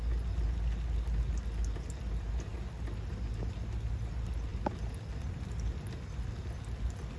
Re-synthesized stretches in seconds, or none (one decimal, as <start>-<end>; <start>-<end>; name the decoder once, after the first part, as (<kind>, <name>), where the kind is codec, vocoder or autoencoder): none